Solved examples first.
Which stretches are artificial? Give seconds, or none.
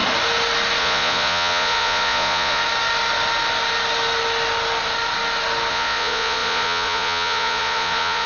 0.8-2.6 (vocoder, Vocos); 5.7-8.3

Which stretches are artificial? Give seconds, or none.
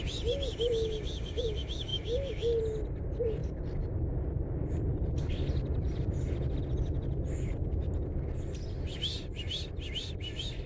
none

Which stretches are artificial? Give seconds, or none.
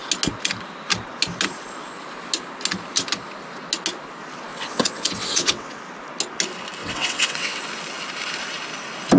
4.5-5.8 (vocoder, WaveNeXt); 6.8-7.6